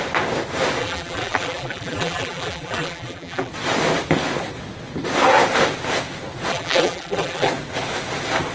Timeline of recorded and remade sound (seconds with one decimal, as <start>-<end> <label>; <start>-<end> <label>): 0.0-0.8 recorded; 0.8-3.5 remade; 3.5-6.5 recorded; 6.5-7.5 remade; 7.5-8.5 recorded